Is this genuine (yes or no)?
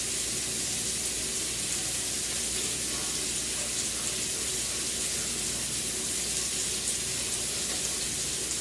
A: yes